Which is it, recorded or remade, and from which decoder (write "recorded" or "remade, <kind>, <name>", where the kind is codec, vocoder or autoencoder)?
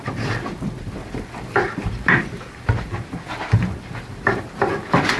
remade, vocoder, BigVGAN v2